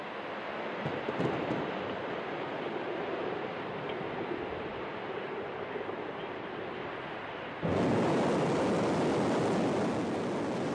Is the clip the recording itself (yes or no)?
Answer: yes